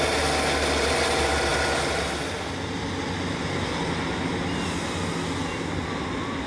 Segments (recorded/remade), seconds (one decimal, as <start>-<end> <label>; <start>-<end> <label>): 0.0-6.5 recorded